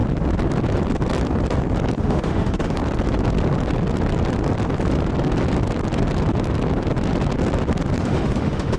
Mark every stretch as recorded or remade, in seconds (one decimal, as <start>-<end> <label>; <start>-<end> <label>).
0.0-2.0 recorded; 2.0-2.8 remade; 2.8-8.0 recorded; 8.0-8.8 remade